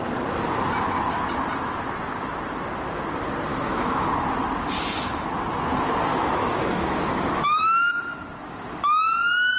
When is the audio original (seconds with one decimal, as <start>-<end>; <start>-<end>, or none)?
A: 0.0-3.5; 4.1-6.1; 8.3-9.6